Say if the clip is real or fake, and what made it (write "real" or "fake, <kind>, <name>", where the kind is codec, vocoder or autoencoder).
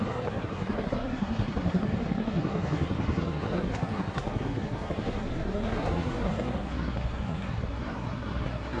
fake, codec, SNAC